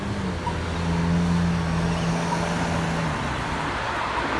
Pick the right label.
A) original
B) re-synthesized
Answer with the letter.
A